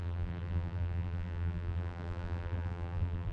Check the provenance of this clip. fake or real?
fake